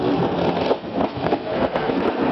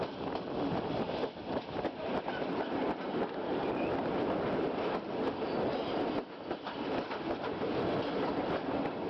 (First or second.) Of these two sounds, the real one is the second